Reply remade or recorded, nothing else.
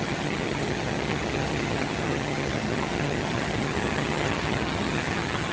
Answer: remade